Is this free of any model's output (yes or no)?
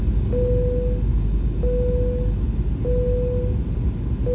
yes